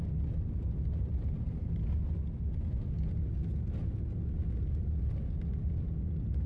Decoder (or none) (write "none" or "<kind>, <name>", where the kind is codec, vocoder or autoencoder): none